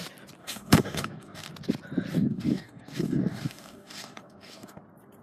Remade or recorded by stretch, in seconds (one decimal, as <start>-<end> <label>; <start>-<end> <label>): 0.0-0.4 recorded; 0.4-1.5 remade; 1.5-2.1 recorded; 2.1-4.8 remade; 4.8-5.2 recorded